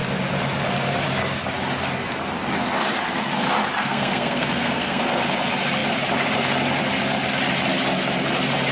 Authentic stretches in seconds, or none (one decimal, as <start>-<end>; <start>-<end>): 0.0-3.8; 5.0-8.7